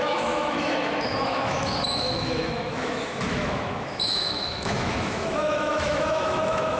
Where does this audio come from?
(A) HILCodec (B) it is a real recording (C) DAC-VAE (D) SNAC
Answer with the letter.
C